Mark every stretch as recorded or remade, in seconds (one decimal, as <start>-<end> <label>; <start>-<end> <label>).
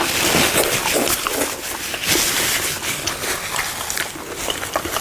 0.0-5.0 recorded